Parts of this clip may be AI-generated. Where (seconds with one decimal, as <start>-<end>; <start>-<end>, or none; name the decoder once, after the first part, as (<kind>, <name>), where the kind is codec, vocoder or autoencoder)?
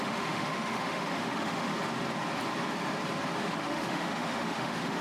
0.0-1.7 (autoencoder, DAC-VAE); 3.4-5.0